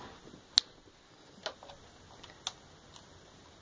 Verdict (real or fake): real